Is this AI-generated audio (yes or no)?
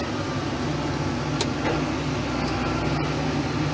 no